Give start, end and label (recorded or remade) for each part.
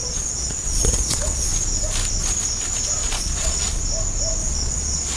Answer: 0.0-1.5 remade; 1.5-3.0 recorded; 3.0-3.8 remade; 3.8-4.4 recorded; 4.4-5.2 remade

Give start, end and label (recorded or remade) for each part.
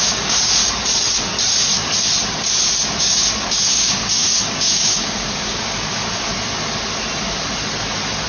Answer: 0.0-0.6 remade; 0.6-3.0 recorded; 3.0-6.3 remade; 6.3-8.3 recorded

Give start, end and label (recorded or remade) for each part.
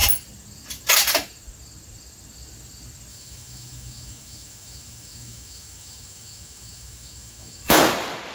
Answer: 0.0-3.1 recorded; 3.1-7.8 remade; 7.8-8.3 recorded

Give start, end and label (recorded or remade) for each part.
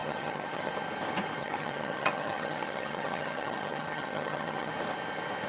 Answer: 0.0-0.7 remade; 0.7-1.4 recorded; 1.4-4.7 remade; 4.7-5.5 recorded